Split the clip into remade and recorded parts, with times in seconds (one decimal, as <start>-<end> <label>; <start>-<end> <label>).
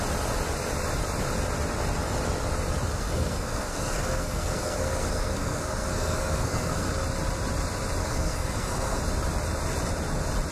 0.0-2.9 recorded; 2.9-6.9 remade; 6.9-8.0 recorded; 8.0-9.0 remade; 9.0-10.5 recorded